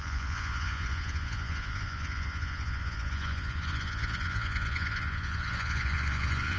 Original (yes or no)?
no